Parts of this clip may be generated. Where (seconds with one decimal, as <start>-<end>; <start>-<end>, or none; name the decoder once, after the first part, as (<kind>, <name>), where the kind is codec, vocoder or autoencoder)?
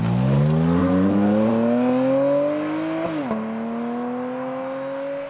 0.8-1.5 (vocoder, BigVGAN v2)